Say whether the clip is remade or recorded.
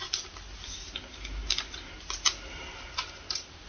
recorded